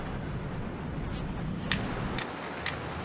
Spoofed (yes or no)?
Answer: no